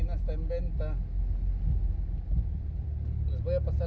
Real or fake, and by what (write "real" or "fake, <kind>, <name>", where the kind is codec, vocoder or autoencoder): real